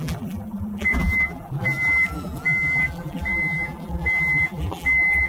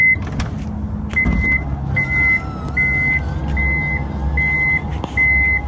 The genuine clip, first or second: second